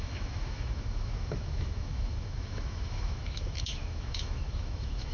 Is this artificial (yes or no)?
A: yes